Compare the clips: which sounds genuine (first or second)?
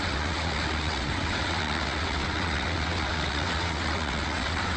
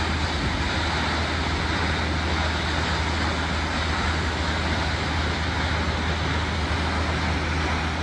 second